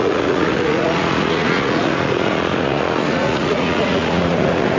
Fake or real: fake